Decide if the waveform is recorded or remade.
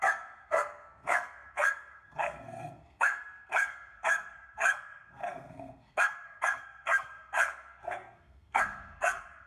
remade